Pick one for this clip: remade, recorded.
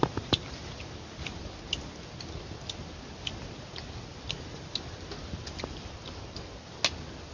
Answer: recorded